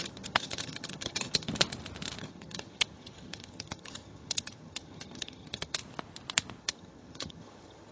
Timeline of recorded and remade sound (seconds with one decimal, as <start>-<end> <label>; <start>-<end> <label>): 0.0-1.5 remade; 1.5-2.2 recorded; 2.2-5.8 remade; 5.8-6.6 recorded; 6.6-7.9 remade

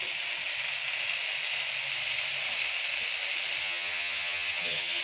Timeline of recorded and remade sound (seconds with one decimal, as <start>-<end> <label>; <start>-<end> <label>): 0.0-3.6 recorded; 3.6-5.0 remade

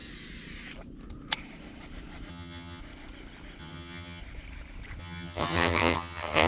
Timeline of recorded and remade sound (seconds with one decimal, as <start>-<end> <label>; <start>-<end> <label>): 0.0-2.3 recorded; 2.3-2.8 remade; 2.8-3.6 recorded; 3.6-4.2 remade; 4.2-5.0 recorded; 5.0-6.5 remade

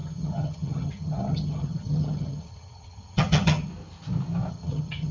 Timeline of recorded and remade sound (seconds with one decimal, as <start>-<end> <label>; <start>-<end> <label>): 0.0-3.7 remade; 3.7-4.5 recorded; 4.5-5.1 remade

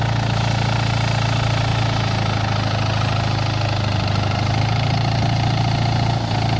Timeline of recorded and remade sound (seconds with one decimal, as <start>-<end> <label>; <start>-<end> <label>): 0.0-6.6 recorded

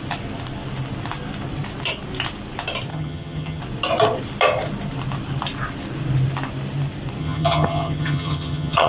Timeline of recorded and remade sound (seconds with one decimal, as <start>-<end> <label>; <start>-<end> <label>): 0.0-2.9 recorded; 2.9-3.6 remade; 3.6-7.2 recorded; 7.2-8.9 remade

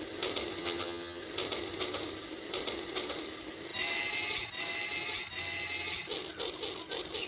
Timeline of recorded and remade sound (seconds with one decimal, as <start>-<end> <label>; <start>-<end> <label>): 0.0-0.6 recorded; 0.6-1.2 remade; 1.2-7.3 recorded

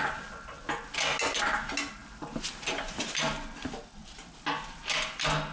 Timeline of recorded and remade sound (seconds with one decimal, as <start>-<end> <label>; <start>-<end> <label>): 0.0-5.5 recorded